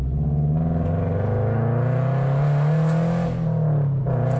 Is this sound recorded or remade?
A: recorded